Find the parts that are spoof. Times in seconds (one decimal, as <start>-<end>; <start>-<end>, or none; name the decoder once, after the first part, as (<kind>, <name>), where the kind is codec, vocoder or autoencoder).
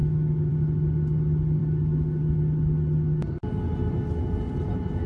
0.0-0.5 (autoencoder, DAC-VAE)